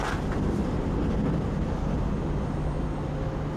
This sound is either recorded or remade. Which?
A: recorded